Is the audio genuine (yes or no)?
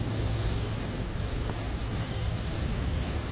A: no